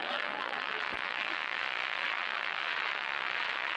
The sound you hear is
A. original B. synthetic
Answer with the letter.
B